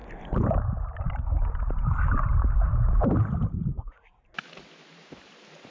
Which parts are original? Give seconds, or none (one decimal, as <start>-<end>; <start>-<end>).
0.0-5.7